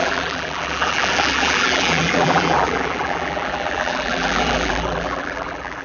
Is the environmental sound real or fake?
fake